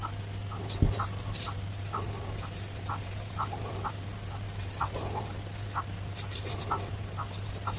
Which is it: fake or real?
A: real